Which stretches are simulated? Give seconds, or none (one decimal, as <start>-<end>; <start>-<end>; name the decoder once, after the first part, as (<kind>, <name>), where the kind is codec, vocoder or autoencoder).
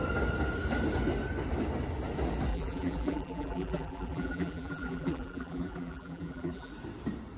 2.5-6.7 (vocoder, BigVGAN v2)